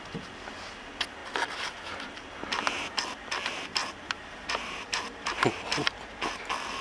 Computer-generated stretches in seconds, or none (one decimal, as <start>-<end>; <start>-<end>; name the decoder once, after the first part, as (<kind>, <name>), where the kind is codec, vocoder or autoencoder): 3.8-6.3 (vocoder, BigVGAN v2)